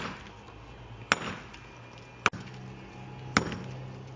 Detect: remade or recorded recorded